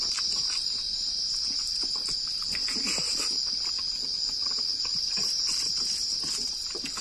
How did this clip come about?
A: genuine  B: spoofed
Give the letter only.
A